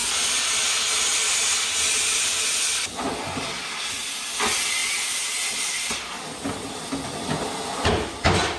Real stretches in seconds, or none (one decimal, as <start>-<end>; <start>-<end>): 0.0-8.6